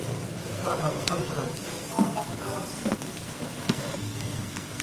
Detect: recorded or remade remade